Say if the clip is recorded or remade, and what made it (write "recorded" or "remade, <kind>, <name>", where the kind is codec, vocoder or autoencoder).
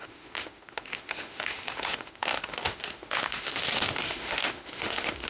remade, autoencoder, DAC-VAE